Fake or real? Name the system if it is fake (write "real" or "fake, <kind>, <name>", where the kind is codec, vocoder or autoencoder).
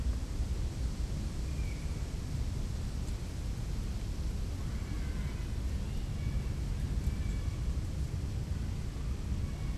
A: real